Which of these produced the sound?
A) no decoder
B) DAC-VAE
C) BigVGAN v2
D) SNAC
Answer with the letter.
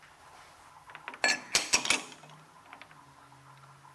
A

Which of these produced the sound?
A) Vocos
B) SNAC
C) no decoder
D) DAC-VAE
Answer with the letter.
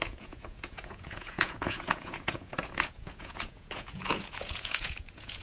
A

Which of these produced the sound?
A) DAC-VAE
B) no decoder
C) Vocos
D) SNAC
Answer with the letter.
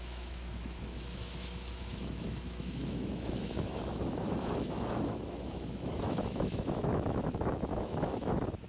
A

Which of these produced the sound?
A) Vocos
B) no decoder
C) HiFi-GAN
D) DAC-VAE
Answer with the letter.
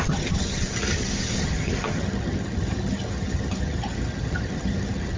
C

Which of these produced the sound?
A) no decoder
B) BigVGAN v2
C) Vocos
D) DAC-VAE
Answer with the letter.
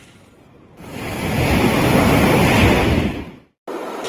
A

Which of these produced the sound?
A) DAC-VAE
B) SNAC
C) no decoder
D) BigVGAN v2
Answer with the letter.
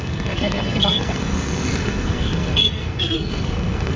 B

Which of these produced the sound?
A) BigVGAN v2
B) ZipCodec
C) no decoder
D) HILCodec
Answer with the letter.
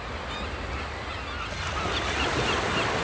C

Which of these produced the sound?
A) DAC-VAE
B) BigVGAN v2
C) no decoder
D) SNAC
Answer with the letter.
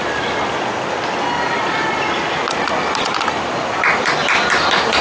C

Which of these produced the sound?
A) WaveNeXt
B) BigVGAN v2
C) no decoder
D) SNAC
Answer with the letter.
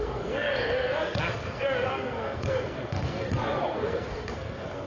D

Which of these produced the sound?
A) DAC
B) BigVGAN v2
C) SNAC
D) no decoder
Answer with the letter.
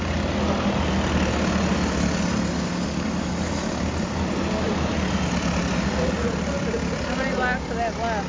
D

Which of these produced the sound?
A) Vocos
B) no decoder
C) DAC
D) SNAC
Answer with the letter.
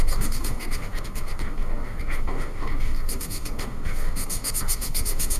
C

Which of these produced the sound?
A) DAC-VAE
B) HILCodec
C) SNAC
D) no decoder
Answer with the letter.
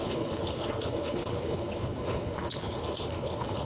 B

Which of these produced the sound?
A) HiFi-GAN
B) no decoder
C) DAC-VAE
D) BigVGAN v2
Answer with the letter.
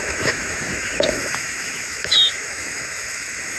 C